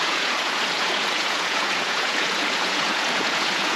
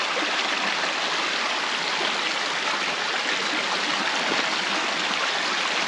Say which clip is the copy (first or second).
first